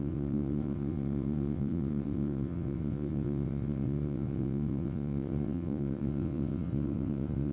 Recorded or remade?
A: remade